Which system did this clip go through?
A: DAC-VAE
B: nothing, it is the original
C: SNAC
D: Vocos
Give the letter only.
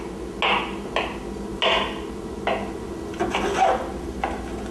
B